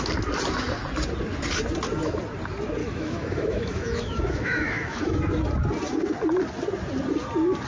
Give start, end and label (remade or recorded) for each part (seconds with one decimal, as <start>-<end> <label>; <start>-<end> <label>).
0.0-2.8 recorded; 2.8-5.2 remade; 5.2-7.7 recorded